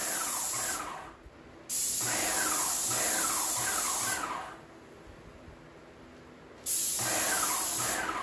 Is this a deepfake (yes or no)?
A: no